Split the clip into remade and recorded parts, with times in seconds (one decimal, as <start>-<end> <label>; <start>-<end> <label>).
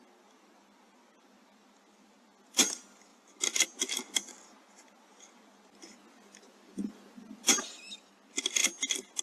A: 0.0-9.2 recorded